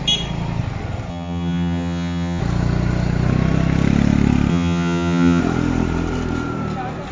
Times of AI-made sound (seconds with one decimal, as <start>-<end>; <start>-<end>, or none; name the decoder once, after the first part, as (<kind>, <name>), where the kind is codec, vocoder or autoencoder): 1.1-2.4 (vocoder, HiFi-GAN); 4.5-5.4

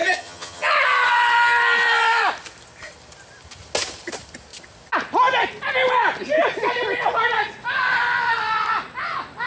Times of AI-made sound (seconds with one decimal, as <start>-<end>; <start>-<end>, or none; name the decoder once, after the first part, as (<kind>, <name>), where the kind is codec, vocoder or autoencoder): 0.0-0.7 (vocoder, HiFi-GAN)

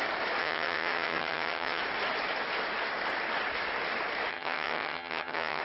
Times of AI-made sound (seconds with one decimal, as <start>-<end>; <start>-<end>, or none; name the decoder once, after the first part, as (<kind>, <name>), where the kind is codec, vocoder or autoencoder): 0.4-1.8 (vocoder, HiFi-GAN); 4.3-5.6

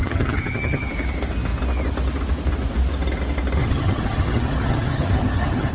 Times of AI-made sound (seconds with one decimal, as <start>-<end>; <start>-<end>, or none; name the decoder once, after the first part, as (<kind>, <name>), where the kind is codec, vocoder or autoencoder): 0.0-0.9 (vocoder, HiFi-GAN); 3.6-5.7

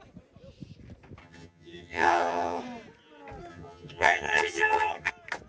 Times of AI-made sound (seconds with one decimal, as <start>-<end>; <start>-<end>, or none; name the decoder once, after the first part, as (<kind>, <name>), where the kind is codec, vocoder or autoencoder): 1.2-2.6 (vocoder, HiFi-GAN); 3.5-5.1

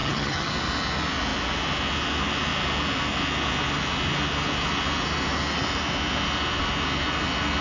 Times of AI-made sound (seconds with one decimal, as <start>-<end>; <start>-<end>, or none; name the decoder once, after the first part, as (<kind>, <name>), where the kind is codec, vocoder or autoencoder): 0.0-0.5 (vocoder, HiFi-GAN)